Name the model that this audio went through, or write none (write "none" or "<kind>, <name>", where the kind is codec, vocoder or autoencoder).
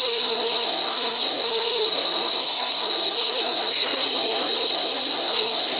codec, SNAC